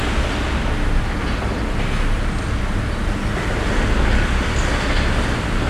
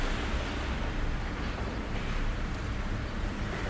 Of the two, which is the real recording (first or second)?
first